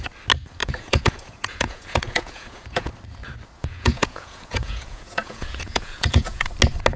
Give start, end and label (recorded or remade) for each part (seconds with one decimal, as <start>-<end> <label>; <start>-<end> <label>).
0.0-0.6 recorded; 0.6-2.9 remade; 2.9-3.6 recorded; 3.6-6.5 remade; 6.5-7.0 recorded